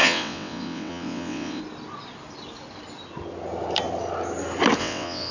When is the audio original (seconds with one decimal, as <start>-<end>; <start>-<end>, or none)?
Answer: 1.6-4.8